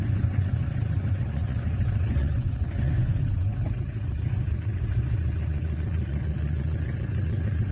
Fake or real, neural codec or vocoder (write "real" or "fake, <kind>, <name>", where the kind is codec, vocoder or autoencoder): fake, vocoder, Vocos